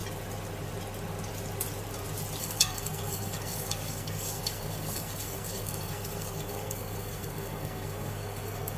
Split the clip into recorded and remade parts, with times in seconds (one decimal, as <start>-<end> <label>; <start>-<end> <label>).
0.0-2.4 recorded; 2.4-8.8 remade